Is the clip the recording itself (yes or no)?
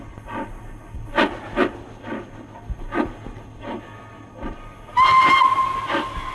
yes